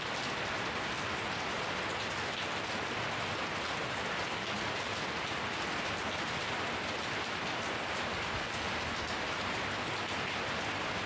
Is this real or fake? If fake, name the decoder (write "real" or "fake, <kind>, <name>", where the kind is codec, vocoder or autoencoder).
real